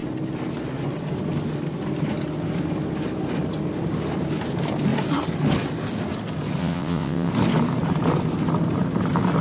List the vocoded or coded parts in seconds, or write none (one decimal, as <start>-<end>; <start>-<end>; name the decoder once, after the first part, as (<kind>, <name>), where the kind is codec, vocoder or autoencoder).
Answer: 6.6-7.3 (vocoder, WaveNeXt)